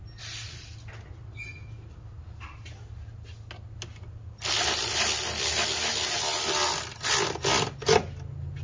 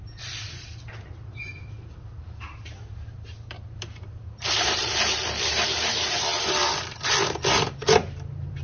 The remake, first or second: second